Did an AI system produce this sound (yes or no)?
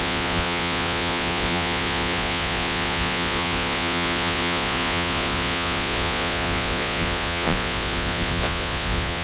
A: yes